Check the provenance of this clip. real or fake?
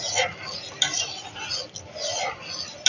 real